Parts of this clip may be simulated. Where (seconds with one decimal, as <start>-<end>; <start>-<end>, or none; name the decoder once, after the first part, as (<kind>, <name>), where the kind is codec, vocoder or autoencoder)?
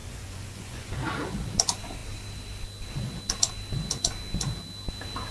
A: 0.0-0.9 (vocoder, Vocos)